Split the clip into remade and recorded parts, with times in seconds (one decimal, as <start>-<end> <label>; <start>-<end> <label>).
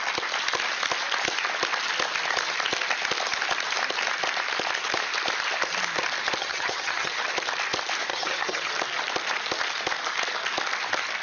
0.0-6.4 recorded; 6.4-7.2 remade; 7.2-8.1 recorded; 8.1-8.7 remade; 8.7-11.2 recorded